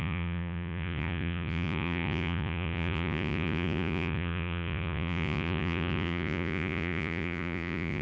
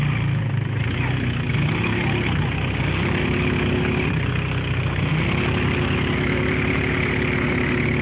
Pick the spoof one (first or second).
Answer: first